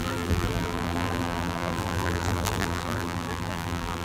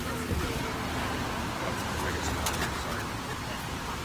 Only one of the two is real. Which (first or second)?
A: second